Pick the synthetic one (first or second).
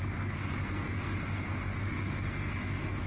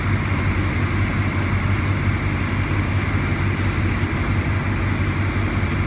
first